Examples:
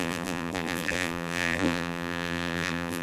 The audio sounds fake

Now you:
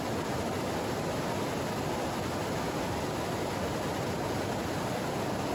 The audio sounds real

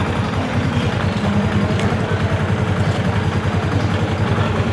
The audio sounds real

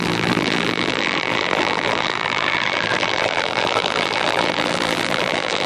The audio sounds fake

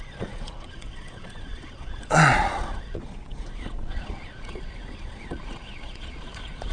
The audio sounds fake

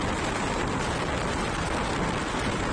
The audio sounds real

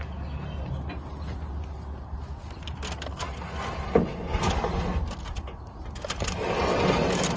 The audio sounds real